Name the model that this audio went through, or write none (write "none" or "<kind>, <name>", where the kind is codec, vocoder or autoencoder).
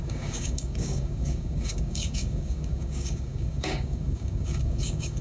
codec, DAC